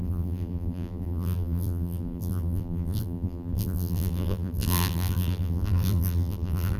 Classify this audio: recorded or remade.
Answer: remade